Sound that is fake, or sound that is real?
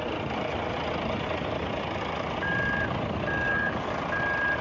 real